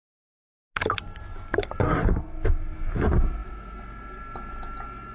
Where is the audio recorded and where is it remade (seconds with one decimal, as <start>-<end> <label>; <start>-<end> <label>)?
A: 0.0-5.1 recorded